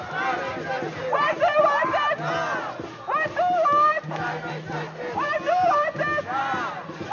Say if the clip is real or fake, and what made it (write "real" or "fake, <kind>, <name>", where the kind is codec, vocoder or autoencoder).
real